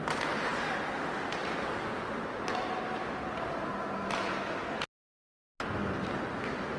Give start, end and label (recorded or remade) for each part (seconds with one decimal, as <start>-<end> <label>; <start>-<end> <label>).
0.0-6.8 recorded